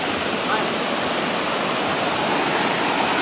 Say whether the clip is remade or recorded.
recorded